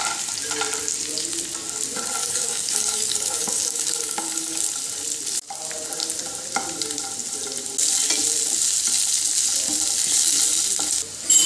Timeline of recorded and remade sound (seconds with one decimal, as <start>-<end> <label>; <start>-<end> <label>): 0.0-2.2 recorded; 2.2-4.6 remade; 4.6-11.5 recorded

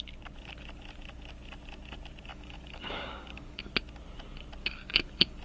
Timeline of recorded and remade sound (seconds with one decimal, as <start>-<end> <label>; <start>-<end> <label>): 0.0-2.3 recorded; 2.3-3.7 remade; 3.7-4.6 recorded; 4.6-5.4 remade

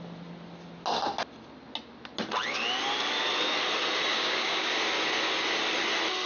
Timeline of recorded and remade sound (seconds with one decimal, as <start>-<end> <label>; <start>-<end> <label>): 0.0-4.1 recorded; 4.1-4.7 remade; 4.7-6.3 recorded

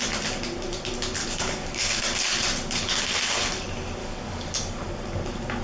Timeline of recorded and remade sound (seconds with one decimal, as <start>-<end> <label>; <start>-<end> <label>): 0.0-1.2 recorded; 1.2-2.0 remade; 2.0-4.0 recorded; 4.0-4.8 remade; 4.8-5.6 recorded

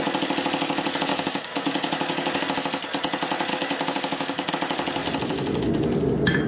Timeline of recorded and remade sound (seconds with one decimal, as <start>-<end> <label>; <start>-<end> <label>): 0.0-1.1 recorded; 1.1-2.4 remade; 2.4-3.5 recorded; 3.5-4.5 remade; 4.5-6.5 recorded

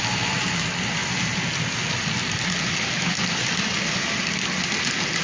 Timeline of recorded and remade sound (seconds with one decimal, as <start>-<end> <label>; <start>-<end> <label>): 0.0-5.2 recorded

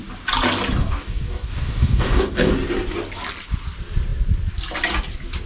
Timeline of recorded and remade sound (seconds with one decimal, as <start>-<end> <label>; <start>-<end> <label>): 0.0-0.8 recorded; 0.8-2.5 remade; 2.5-5.5 recorded